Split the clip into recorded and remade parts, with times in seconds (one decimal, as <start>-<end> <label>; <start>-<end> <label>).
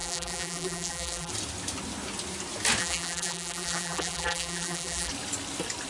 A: 0.0-1.3 remade; 1.3-2.8 recorded; 2.8-5.1 remade; 5.1-5.9 recorded